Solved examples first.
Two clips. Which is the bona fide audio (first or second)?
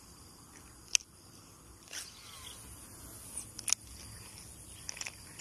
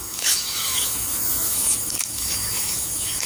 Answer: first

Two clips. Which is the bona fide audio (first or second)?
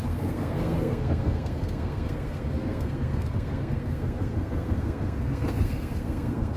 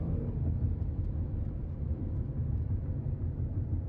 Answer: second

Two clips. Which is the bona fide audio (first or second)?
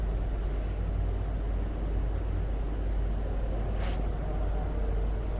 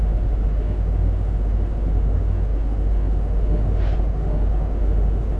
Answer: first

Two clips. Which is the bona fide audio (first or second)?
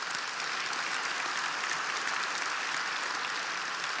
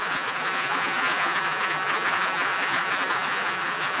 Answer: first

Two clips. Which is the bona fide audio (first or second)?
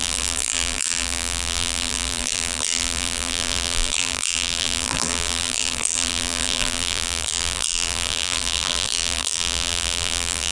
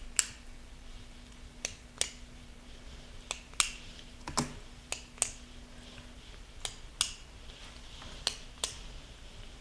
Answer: second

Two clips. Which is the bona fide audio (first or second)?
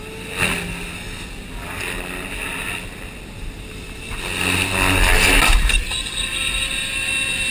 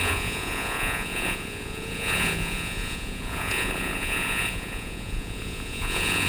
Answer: first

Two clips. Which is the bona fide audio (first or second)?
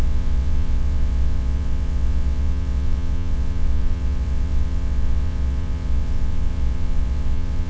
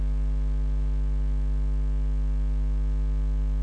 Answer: second